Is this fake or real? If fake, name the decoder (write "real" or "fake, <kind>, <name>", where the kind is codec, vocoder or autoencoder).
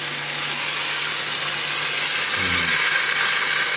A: real